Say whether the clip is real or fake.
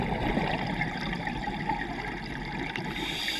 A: real